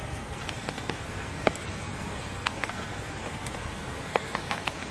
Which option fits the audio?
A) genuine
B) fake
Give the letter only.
B